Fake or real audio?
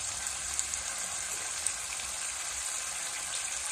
fake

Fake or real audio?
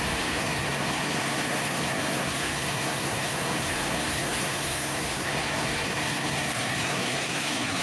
fake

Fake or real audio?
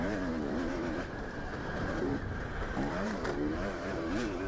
fake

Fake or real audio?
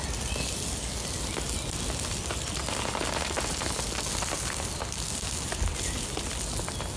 real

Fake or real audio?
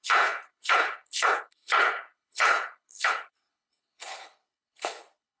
fake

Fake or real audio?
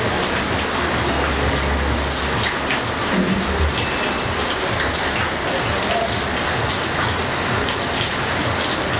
real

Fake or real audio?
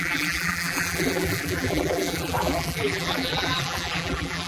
fake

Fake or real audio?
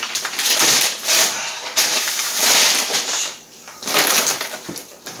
fake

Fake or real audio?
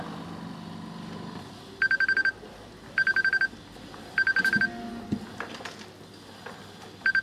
real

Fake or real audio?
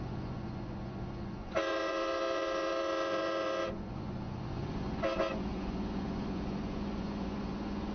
fake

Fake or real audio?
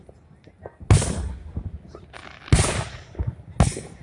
real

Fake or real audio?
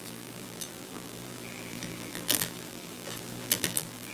fake